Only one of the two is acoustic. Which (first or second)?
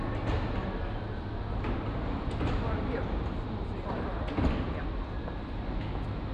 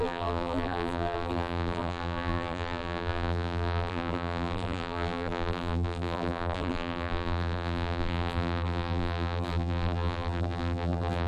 first